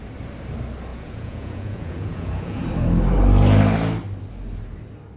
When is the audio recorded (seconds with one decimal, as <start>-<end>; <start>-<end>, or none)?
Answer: 0.0-0.9; 2.6-5.2